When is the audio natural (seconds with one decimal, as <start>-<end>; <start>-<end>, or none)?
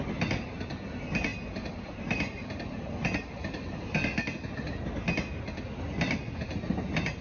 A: 0.0-7.2